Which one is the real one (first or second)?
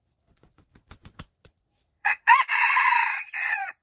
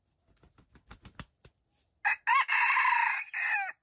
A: second